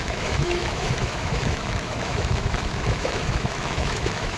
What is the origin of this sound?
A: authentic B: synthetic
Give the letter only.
B